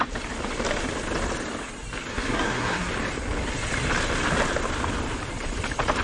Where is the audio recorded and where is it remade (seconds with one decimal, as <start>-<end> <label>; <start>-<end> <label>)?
0.0-2.1 recorded; 2.1-2.9 remade; 2.9-6.0 recorded